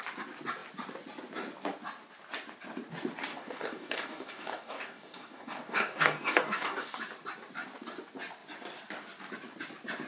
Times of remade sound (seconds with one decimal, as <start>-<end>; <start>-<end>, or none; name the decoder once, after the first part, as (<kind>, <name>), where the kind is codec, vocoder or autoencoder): 3.3-7.0 (codec, DAC)